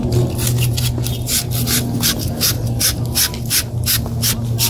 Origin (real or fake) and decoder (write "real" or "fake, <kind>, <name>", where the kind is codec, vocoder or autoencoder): real